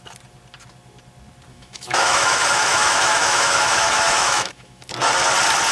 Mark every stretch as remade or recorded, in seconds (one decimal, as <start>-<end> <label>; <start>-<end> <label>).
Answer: 0.0-1.5 recorded; 1.5-4.9 remade; 4.9-5.7 recorded